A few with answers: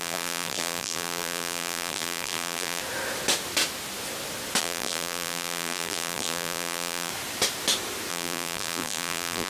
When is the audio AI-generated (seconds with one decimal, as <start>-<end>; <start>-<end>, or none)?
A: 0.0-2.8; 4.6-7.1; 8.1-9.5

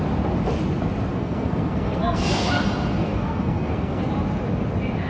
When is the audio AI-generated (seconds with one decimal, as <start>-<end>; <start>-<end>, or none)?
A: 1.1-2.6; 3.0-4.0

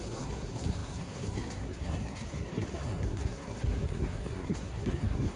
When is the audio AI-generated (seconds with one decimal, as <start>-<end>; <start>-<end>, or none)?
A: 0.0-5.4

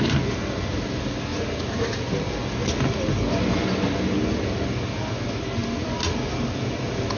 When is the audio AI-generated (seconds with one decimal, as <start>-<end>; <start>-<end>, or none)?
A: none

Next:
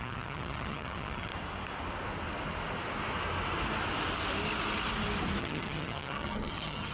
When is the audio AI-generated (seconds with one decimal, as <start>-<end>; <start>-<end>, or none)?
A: 0.0-1.3; 5.4-6.9

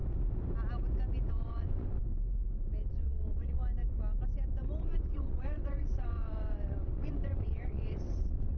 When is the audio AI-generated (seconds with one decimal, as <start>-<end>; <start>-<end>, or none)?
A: 1.3-2.0; 2.9-3.6; 4.8-8.6

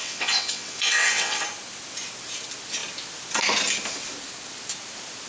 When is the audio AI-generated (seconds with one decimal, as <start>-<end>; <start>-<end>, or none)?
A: 0.0-1.4